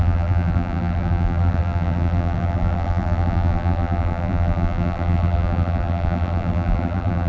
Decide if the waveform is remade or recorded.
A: remade